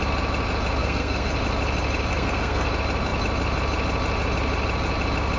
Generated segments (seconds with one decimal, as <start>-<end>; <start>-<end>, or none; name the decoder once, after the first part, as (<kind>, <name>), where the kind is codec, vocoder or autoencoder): 0.8-1.3 (codec, SNAC); 2.1-2.7